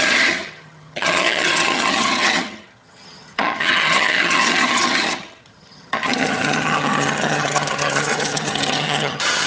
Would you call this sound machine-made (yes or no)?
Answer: yes